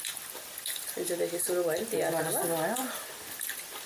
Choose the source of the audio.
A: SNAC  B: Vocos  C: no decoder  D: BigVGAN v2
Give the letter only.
C